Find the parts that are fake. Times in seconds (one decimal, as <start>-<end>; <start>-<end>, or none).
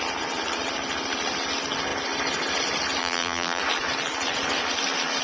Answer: 3.0-3.6